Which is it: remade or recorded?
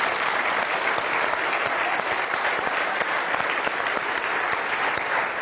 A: recorded